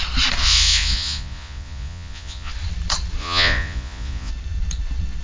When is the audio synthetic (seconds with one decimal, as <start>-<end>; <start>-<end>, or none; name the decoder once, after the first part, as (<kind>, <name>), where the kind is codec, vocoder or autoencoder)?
0.4-2.5 (vocoder, Vocos); 3.2-4.3